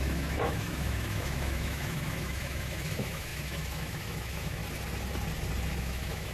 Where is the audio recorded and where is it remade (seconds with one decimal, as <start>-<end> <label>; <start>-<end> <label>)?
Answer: 0.0-4.6 remade; 4.6-5.7 recorded; 5.7-6.3 remade